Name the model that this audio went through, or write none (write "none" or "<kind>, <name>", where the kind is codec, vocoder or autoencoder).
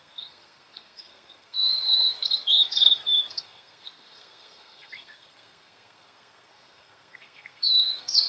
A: codec, SNAC